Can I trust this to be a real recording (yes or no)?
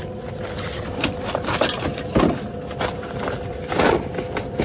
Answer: yes